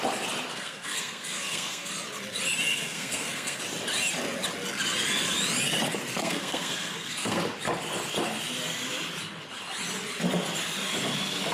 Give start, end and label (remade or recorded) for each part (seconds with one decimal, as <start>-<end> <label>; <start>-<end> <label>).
0.0-0.5 recorded; 0.5-1.9 remade; 1.9-2.7 recorded; 2.7-3.6 remade; 3.6-6.2 recorded; 6.2-7.4 remade; 7.4-11.5 recorded